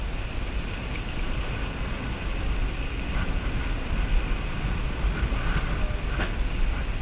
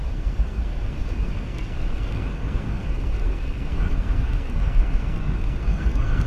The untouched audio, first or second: first